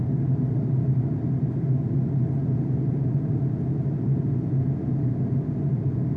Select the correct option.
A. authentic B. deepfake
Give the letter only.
A